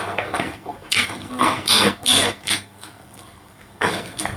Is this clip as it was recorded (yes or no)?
no